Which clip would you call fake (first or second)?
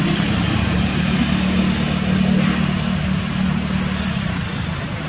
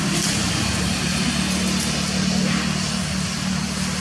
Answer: first